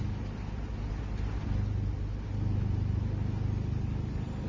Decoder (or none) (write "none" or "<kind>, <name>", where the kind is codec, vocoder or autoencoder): none